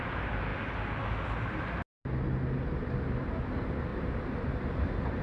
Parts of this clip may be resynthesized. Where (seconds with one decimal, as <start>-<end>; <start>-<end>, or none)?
3.9-5.2